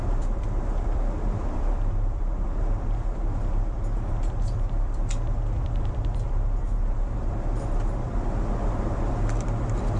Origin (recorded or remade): remade